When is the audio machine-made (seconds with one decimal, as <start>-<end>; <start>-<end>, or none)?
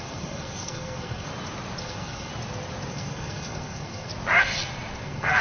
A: 0.0-1.3; 1.8-2.3; 2.9-4.1; 5.0-5.4